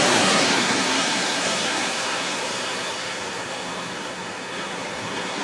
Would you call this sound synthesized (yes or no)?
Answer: yes